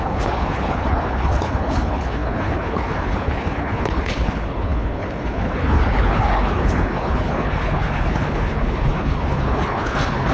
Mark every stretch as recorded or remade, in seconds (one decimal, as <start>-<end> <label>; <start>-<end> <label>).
0.0-10.3 remade